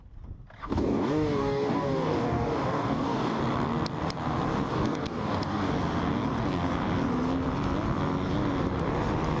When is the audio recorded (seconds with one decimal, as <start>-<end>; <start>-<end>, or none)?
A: 0.0-0.6; 3.4-4.7; 5.7-9.4